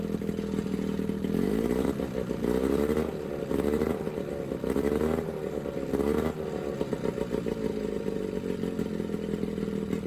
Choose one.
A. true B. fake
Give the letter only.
A